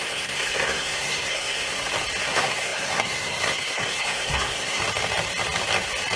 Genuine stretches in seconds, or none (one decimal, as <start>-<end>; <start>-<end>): 1.7-2.2; 4.8-6.2